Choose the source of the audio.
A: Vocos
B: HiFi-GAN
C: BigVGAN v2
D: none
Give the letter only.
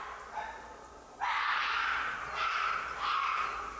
D